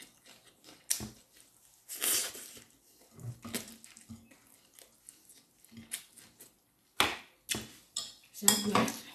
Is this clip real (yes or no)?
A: yes